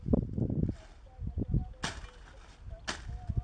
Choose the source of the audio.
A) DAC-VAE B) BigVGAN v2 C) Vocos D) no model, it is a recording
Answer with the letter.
D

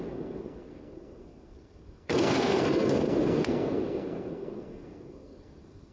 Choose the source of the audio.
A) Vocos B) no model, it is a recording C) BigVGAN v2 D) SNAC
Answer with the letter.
D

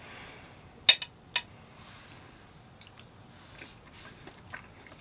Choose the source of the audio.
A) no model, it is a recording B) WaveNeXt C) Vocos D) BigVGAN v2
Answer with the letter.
A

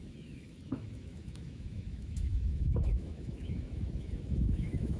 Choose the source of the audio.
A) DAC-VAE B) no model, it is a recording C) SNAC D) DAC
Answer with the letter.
A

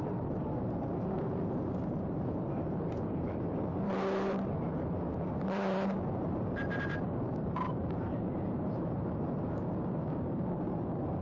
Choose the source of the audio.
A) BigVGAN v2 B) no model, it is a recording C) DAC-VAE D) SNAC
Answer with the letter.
A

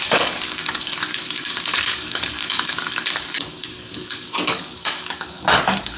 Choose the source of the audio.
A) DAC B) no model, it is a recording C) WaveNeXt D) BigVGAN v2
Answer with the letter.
A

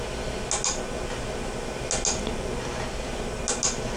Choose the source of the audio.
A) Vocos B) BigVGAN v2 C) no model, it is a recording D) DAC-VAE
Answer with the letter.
C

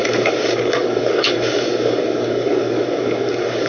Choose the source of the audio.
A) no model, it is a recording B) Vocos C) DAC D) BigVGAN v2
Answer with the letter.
C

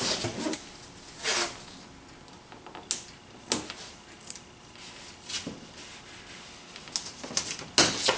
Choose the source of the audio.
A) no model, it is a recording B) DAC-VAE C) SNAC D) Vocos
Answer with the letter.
A